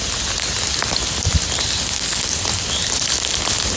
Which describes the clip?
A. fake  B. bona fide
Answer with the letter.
B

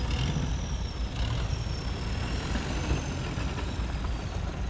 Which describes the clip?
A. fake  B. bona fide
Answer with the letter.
B